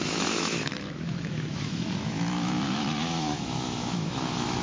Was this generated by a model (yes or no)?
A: yes